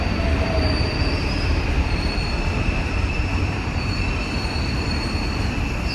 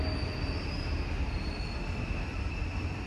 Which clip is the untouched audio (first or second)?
second